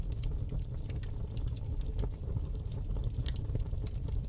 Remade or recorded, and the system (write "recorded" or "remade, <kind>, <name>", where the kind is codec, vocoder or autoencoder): remade, vocoder, BigVGAN v2